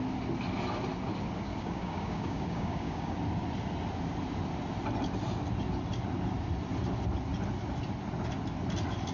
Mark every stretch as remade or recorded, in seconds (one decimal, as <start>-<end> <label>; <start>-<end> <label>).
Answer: 0.0-1.5 recorded; 1.5-3.2 remade; 3.2-9.1 recorded